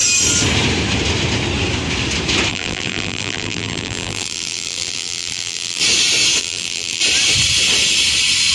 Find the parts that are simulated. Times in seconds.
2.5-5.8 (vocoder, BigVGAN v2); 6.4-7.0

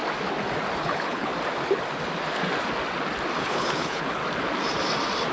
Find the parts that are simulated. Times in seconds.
0.8-1.3 (codec, HILCodec); 3.4-4.2

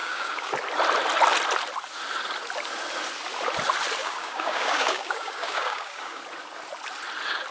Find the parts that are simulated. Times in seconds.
0.0-0.5 (codec, DAC); 4.0-6.2

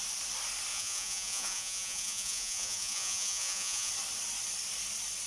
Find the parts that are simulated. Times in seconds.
0.7-3.9 (vocoder, Vocos)

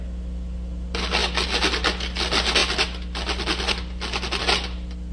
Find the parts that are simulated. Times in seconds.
none

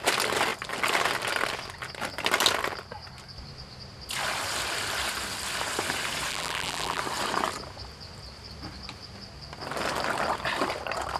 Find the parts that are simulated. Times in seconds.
6.3-7.0 (vocoder, BigVGAN v2)